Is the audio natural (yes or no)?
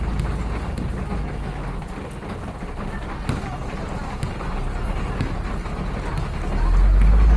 yes